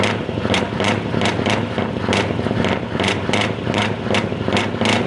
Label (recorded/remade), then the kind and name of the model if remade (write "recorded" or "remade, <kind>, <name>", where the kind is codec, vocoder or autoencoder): recorded